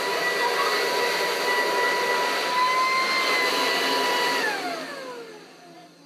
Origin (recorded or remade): recorded